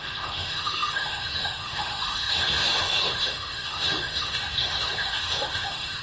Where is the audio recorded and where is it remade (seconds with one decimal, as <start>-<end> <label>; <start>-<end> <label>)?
0.0-6.0 remade